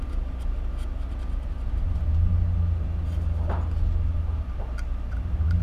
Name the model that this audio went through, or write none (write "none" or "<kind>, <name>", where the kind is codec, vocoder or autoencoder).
none